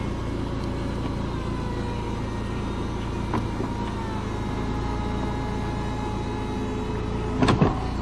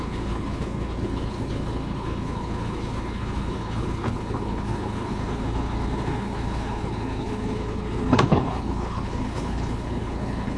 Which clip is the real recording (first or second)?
first